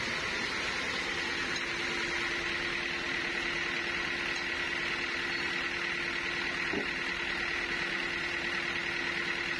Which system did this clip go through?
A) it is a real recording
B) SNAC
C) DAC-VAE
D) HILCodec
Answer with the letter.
A